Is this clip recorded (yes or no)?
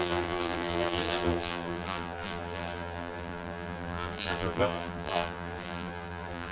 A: no